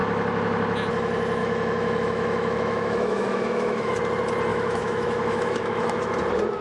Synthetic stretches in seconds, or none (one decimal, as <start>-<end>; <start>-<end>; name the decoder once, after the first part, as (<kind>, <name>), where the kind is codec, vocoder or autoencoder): 1.4-4.0 (autoencoder, DAC-VAE); 4.5-6.1